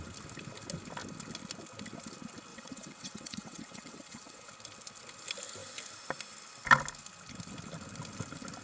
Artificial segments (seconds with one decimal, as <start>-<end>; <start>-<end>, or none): 2.5-4.5